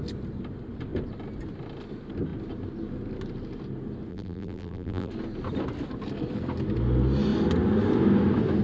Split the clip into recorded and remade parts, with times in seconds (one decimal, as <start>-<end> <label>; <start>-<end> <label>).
0.0-4.1 recorded; 4.1-5.1 remade; 5.1-8.6 recorded